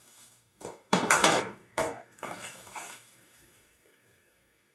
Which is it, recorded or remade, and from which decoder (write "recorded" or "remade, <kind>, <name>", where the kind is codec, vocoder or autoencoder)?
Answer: remade, codec, DAC